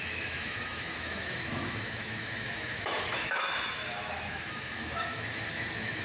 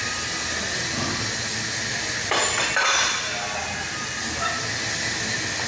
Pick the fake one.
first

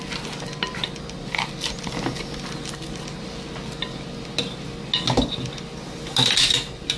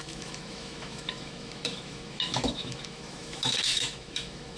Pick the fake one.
second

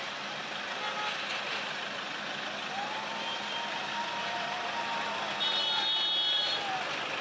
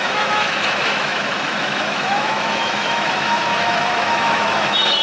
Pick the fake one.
second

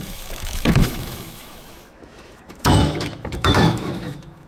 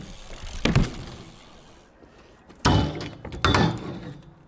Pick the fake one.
first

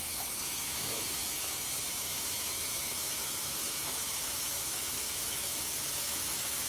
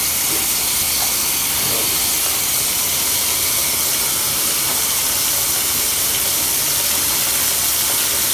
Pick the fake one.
first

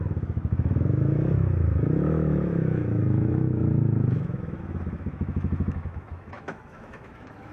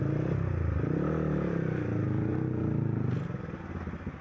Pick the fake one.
first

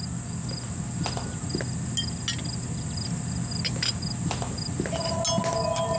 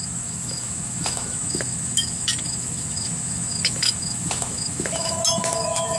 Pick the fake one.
second